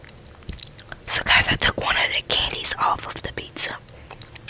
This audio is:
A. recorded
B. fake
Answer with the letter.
A